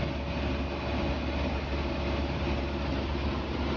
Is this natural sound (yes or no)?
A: yes